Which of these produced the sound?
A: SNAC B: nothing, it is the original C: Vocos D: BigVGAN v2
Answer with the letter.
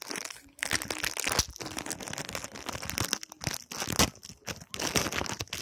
B